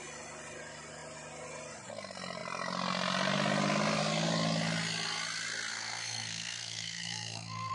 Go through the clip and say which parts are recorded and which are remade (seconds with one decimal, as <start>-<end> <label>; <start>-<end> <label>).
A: 0.0-5.7 recorded; 5.7-7.7 remade